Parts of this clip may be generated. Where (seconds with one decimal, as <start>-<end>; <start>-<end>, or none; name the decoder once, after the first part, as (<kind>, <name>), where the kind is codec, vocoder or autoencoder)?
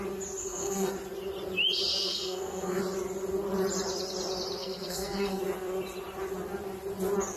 0.4-0.9 (codec, SNAC); 1.9-2.8; 4.6-5.4